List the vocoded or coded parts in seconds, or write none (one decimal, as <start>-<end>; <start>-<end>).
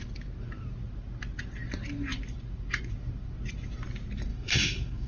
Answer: 4.3-5.1